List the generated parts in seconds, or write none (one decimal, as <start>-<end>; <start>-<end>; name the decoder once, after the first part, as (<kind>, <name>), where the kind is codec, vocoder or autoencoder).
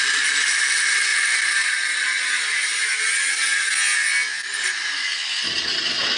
none